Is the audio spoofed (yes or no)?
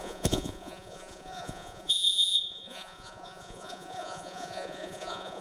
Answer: yes